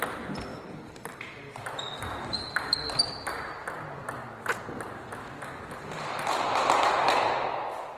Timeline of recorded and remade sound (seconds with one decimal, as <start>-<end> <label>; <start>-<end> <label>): 0.0-8.0 recorded